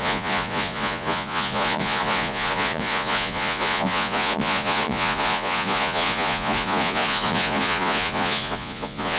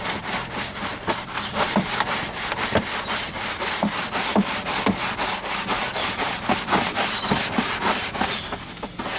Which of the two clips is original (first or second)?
second